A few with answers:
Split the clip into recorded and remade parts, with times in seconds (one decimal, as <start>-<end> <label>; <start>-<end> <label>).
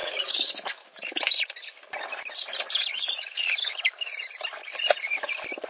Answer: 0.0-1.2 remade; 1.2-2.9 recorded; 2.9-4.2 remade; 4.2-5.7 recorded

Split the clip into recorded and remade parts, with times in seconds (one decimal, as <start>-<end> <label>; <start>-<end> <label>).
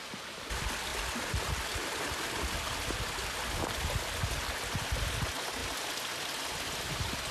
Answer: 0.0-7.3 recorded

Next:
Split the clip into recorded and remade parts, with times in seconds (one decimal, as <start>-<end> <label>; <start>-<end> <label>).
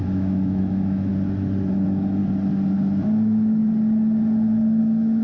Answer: 0.0-1.1 remade; 1.1-1.7 recorded; 1.7-2.2 remade; 2.2-3.0 recorded; 3.0-3.6 remade; 3.6-4.8 recorded; 4.8-5.2 remade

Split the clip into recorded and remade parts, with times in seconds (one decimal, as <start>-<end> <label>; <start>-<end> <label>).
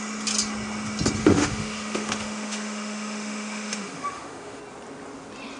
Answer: 0.0-1.2 recorded; 1.2-4.6 remade; 4.6-5.6 recorded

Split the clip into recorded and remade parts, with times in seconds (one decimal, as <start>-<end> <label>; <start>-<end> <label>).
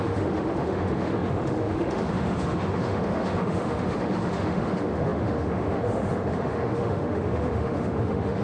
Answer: 0.0-8.4 remade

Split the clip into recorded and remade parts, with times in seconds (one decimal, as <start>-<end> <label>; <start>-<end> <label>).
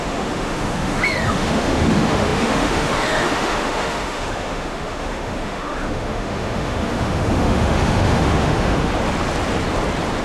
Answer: 0.0-8.9 remade; 8.9-10.2 recorded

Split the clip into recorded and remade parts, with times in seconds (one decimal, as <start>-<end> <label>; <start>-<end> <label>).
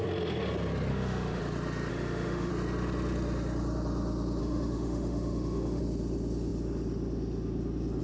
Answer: 0.0-0.9 recorded; 0.9-1.4 remade; 1.4-1.9 recorded; 1.9-2.5 remade; 2.5-4.4 recorded; 4.4-5.8 remade; 5.8-8.0 recorded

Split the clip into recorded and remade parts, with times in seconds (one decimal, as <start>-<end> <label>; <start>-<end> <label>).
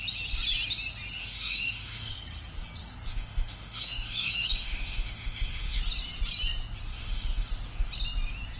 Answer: 0.0-1.2 recorded; 1.2-2.1 remade; 2.1-3.1 recorded; 3.1-5.8 remade; 5.8-6.9 recorded; 6.9-7.5 remade; 7.5-8.6 recorded